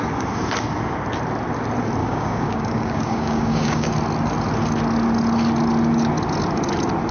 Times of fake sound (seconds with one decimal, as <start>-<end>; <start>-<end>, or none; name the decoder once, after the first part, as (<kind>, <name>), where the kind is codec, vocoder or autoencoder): 2.0-3.9 (codec, DAC)